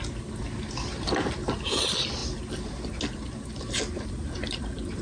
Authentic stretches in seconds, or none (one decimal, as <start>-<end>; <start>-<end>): 0.0-5.0